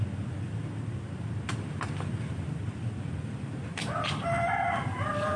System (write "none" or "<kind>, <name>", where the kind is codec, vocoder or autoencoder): none